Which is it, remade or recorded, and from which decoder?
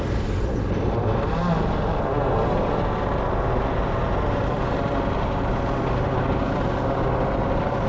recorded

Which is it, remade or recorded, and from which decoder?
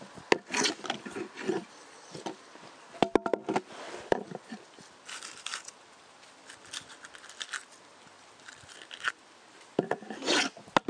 recorded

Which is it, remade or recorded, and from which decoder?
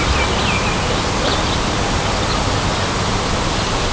recorded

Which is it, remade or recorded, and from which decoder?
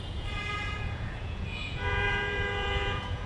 remade, vocoder, Vocos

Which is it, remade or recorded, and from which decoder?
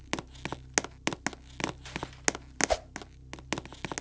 recorded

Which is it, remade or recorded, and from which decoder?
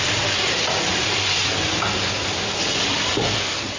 recorded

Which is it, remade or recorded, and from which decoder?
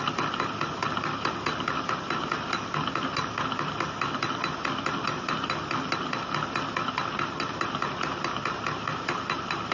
recorded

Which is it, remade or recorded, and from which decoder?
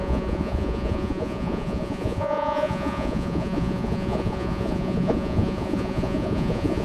remade, vocoder, Vocos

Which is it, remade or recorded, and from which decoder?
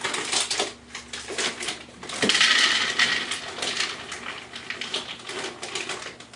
recorded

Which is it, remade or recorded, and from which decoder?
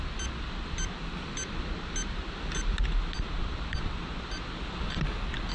recorded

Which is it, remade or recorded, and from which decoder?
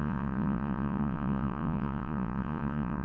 remade, vocoder, Vocos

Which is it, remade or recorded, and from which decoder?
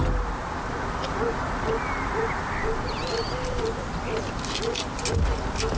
recorded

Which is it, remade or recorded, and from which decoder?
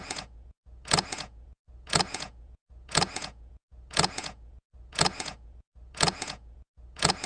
remade, vocoder, Vocos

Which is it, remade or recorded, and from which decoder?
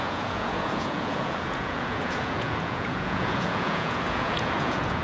remade, vocoder, Vocos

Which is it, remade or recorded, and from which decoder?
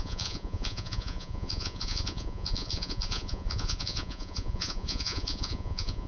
remade, vocoder, Vocos